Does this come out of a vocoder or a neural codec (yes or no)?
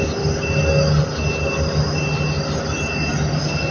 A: no